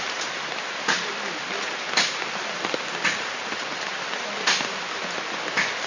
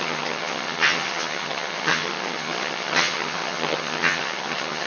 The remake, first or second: second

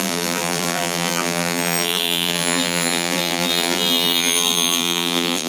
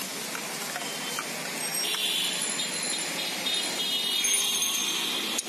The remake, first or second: first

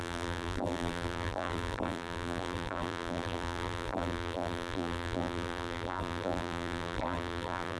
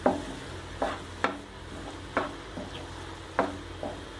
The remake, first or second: first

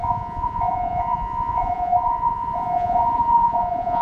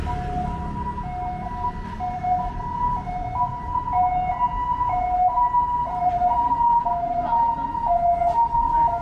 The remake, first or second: first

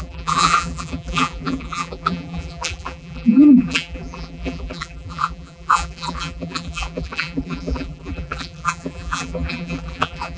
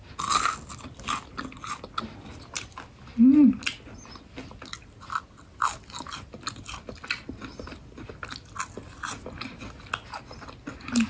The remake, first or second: first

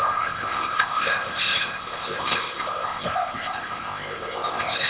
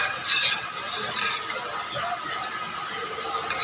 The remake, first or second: first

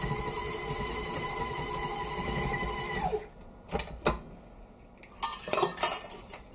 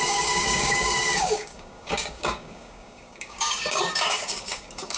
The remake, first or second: second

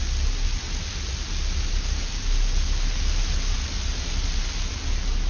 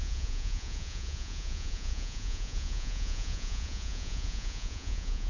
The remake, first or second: second